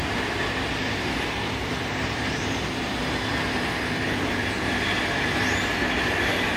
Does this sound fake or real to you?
fake